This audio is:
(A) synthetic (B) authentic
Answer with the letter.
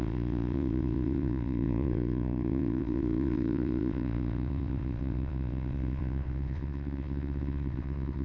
A